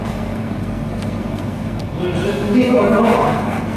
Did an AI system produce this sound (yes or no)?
yes